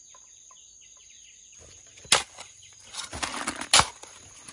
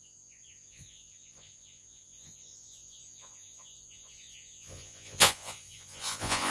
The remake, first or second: second